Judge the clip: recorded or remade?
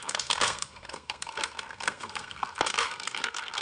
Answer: remade